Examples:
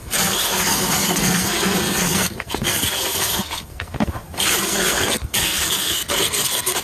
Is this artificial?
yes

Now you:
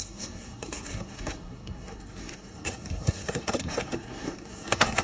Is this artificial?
yes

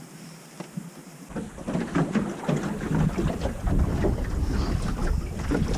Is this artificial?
no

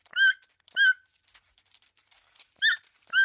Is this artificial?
no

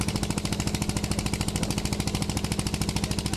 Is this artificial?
no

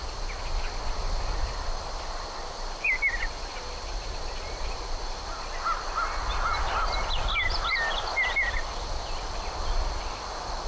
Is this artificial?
no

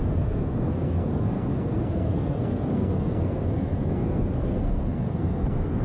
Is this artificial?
yes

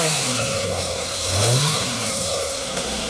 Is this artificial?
yes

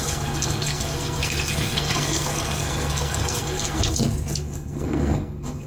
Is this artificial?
yes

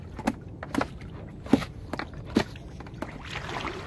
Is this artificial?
no